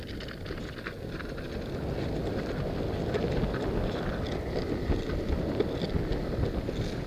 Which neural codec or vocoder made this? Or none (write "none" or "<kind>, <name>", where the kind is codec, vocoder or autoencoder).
none